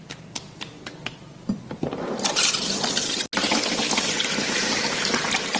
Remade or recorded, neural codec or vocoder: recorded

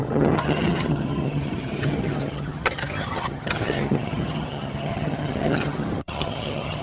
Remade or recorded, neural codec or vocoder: remade, vocoder, HiFi-GAN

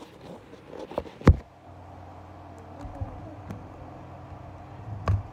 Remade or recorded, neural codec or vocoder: recorded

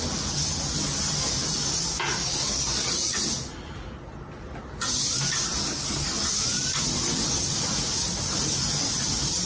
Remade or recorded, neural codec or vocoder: recorded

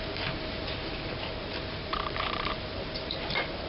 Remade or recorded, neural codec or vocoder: remade, vocoder, BigVGAN v2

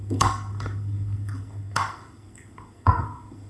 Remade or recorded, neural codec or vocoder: remade, codec, SNAC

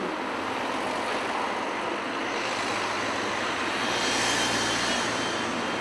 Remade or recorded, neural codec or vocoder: recorded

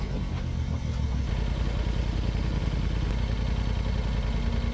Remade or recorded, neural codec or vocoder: recorded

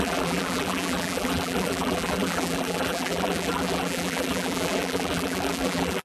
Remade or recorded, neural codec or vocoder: remade, vocoder, BigVGAN v2